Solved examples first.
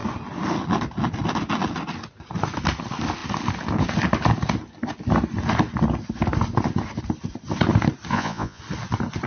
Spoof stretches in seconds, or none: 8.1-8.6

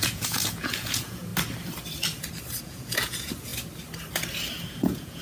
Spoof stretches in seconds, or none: 0.0-1.3; 2.6-3.5; 4.7-5.2

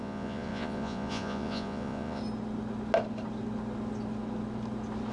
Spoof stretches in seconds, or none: 0.0-2.2

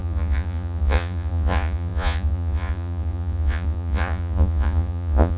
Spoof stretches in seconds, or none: 0.0-5.4

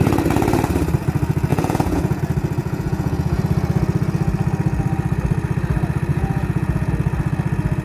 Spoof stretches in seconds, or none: 1.5-2.2; 2.6-3.4; 6.1-6.9